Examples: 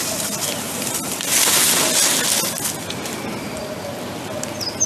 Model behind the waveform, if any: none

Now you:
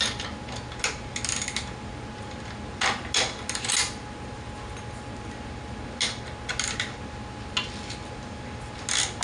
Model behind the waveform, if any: none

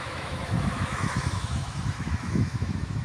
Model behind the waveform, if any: autoencoder, DAC-VAE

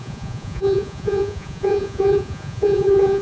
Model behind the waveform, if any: vocoder, Vocos